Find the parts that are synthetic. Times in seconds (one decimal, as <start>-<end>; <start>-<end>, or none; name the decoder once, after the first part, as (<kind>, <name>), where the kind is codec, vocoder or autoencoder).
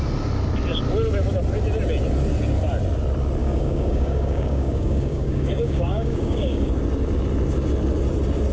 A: 3.4-6.7 (codec, DAC)